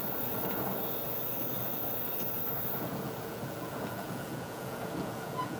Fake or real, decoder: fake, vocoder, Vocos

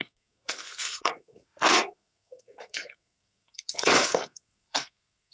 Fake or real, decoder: fake, codec, SNAC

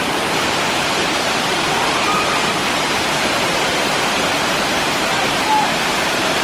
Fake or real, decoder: fake, vocoder, BigVGAN v2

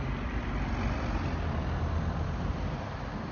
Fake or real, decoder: real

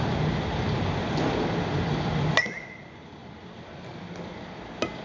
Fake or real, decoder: real